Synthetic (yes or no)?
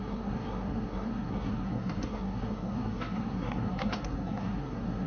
yes